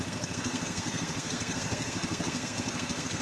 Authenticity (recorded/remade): remade